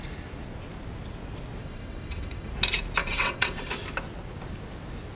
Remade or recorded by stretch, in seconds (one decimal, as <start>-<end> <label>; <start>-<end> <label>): 0.0-1.6 recorded; 1.6-2.5 remade; 2.5-3.0 recorded; 3.0-3.7 remade; 3.7-5.2 recorded